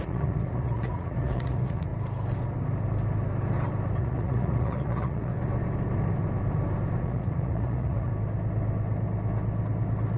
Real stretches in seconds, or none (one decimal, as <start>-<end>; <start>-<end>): 1.9-4.0; 5.3-7.0; 8.1-10.2